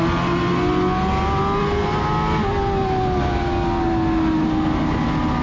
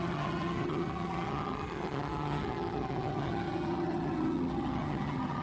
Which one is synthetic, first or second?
second